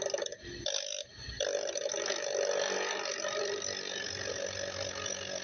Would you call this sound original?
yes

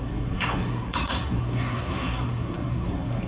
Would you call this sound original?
no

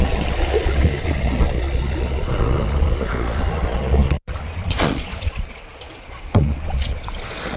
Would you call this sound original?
no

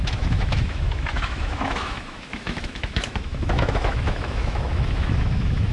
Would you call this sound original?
no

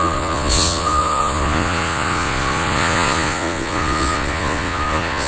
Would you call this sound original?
no